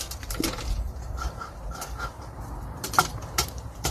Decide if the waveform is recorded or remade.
remade